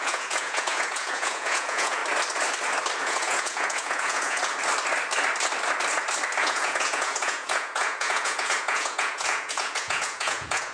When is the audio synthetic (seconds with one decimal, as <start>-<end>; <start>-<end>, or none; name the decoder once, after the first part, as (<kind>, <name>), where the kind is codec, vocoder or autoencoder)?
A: 0.0-2.0 (vocoder, Vocos); 3.0-4.4; 6.4-10.7